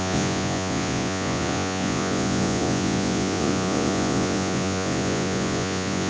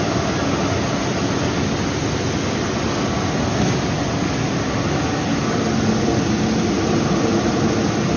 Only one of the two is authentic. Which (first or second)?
second